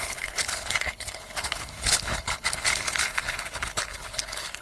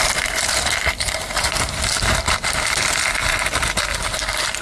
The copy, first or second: first